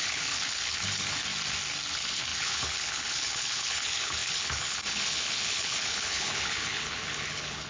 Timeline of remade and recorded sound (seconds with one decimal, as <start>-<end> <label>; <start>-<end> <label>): 0.0-1.2 remade; 1.2-1.9 recorded; 1.9-7.7 remade